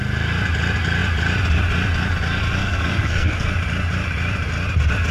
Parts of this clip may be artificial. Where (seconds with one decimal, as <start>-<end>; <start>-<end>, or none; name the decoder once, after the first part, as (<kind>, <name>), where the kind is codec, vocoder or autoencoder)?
2.6-3.5 (codec, SNAC)